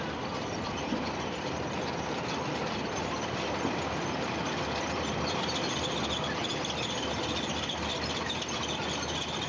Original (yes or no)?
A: yes